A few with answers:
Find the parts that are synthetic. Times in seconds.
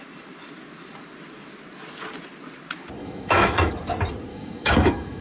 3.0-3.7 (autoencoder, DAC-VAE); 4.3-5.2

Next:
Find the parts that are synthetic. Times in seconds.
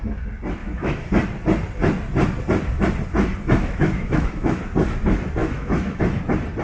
0.6-1.1 (autoencoder, DAC-VAE); 3.6-4.6; 5.4-6.0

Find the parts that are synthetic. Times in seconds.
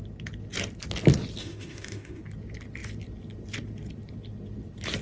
1.4-2.2 (autoencoder, DAC-VAE)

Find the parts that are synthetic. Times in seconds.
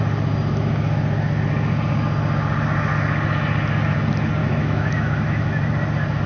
4.4-5.5 (autoencoder, DAC-VAE)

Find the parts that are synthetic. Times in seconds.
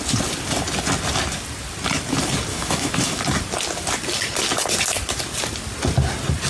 2.5-3.2 (autoencoder, DAC-VAE)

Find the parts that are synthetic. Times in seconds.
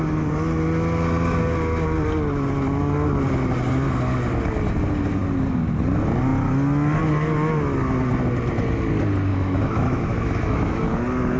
9.3-10.8 (autoencoder, DAC-VAE)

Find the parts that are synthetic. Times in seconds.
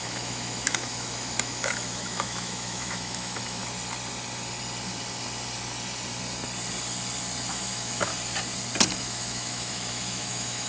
0.0-3.6 (autoencoder, DAC-VAE); 7.5-8.1; 9.0-10.7